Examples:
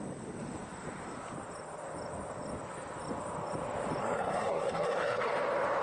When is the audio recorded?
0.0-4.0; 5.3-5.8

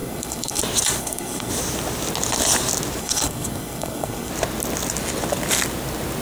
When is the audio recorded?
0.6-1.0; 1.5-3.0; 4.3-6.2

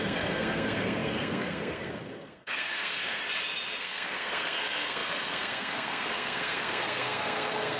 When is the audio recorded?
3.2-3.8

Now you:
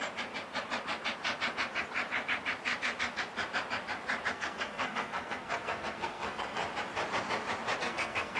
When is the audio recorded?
0.0-4.3; 6.6-7.8

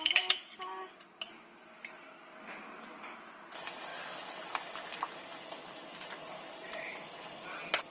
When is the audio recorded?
0.0-7.9